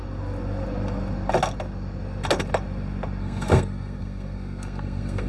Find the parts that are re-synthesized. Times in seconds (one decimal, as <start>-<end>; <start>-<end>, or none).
3.2-5.3

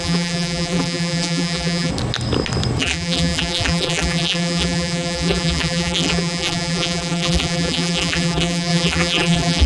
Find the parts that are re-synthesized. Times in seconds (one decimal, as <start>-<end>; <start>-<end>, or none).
0.0-1.9; 2.8-9.7

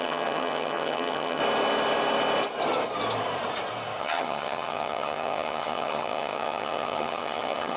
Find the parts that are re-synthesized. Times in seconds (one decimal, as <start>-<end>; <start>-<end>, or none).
0.0-1.4; 4.0-7.8

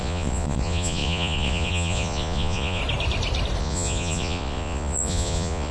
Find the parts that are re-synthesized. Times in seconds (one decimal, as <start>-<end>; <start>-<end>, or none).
0.0-2.8; 3.6-5.7

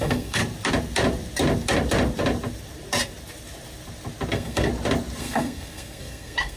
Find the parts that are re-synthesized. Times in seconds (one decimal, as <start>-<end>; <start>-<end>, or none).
0.0-0.4; 4.3-4.7; 5.2-6.6

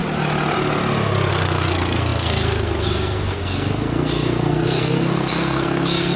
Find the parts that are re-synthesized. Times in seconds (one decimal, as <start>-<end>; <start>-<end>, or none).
1.3-6.2

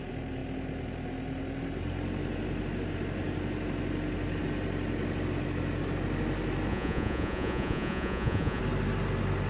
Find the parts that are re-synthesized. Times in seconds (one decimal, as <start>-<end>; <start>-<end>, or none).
6.7-8.6